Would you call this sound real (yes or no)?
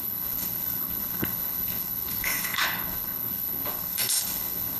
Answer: no